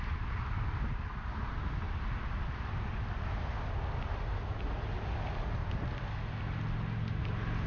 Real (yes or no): yes